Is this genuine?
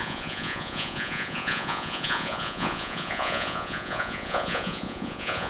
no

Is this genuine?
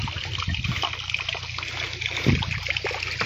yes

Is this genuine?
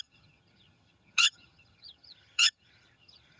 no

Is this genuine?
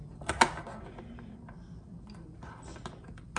yes